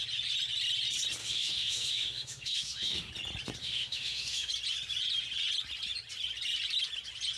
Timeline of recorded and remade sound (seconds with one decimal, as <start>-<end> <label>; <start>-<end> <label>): 0.0-1.2 recorded; 1.2-3.1 remade; 3.1-3.6 recorded; 3.6-4.5 remade; 4.5-7.4 recorded